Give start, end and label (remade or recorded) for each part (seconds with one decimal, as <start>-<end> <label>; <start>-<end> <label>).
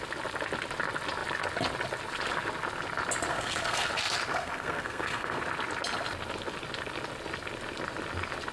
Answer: 0.0-3.3 recorded; 3.3-3.9 remade; 3.9-4.3 recorded; 4.3-5.4 remade; 5.4-8.5 recorded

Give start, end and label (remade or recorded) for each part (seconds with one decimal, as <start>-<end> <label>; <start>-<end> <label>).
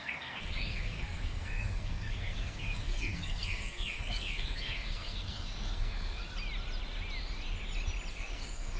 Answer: 0.0-6.2 remade; 6.2-8.1 recorded; 8.1-8.8 remade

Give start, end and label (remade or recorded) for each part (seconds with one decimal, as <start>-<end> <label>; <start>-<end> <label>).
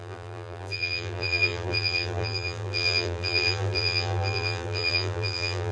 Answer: 0.0-5.7 remade